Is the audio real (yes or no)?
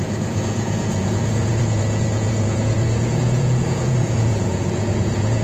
no